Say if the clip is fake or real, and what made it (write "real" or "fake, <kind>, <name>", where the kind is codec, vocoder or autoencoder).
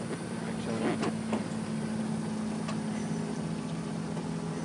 real